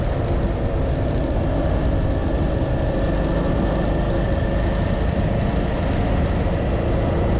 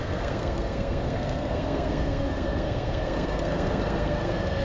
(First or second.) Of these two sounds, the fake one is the second